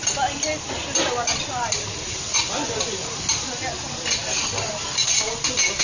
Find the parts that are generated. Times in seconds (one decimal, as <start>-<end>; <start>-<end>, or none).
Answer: 2.3-2.8